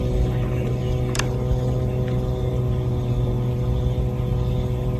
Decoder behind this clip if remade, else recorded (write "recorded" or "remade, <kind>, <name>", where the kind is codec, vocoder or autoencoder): recorded